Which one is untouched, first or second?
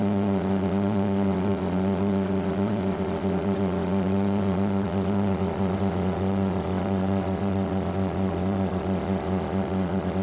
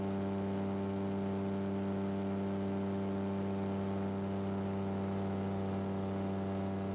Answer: second